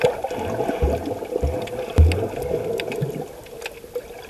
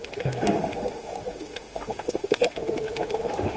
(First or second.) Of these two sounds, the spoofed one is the second